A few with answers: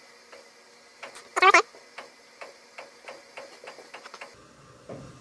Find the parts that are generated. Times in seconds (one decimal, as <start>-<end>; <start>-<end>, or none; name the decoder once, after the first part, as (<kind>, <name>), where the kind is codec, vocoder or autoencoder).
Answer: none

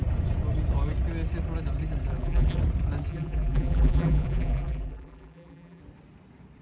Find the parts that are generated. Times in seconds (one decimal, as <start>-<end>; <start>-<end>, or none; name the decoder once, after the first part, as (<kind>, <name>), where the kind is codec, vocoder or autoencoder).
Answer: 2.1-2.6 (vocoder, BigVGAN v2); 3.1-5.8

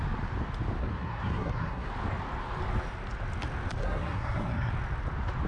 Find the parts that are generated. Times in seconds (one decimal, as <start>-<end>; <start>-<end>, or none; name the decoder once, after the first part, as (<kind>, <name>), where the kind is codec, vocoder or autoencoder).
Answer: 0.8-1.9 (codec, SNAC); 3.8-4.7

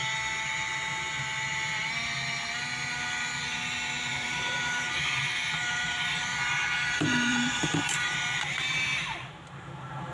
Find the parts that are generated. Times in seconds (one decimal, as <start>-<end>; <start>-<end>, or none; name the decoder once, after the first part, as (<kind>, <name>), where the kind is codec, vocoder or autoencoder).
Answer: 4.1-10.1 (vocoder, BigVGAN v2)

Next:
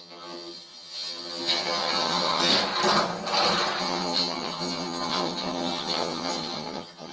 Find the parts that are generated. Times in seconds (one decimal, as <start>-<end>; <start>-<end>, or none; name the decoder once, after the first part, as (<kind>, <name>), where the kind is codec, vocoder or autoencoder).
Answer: 0.0-2.5 (vocoder, HiFi-GAN); 3.8-7.1

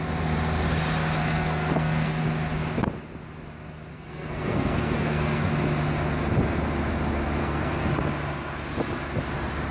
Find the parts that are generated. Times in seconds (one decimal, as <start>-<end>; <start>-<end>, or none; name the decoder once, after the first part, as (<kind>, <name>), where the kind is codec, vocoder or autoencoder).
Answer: 1.2-2.2 (codec, SNAC); 3.9-5.5; 7.4-7.9

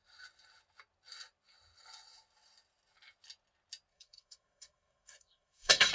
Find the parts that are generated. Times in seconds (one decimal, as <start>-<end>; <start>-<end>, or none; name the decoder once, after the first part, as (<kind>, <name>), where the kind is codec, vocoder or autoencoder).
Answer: 3.9-5.9 (codec, SNAC)

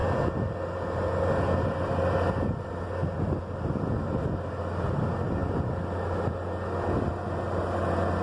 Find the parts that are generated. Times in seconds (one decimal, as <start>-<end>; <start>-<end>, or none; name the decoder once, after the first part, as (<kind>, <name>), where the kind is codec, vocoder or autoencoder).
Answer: none